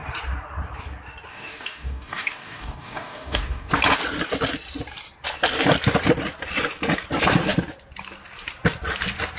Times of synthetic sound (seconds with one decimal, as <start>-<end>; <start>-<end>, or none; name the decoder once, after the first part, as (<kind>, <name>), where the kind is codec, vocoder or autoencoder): 1.3-3.7 (codec, DAC)